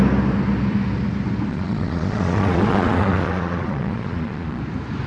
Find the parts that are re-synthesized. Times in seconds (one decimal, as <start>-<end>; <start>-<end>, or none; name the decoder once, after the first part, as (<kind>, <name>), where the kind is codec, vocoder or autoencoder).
1.5-4.6 (vocoder, Vocos)

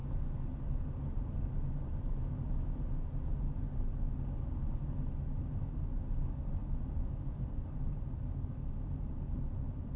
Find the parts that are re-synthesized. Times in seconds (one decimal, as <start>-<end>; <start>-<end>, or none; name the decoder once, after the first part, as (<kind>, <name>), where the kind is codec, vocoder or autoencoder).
none